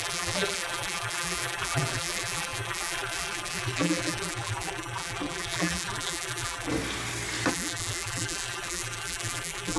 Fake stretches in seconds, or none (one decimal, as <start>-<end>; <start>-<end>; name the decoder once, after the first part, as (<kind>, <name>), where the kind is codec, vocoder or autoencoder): 0.0-6.7 (vocoder, BigVGAN v2); 7.5-9.8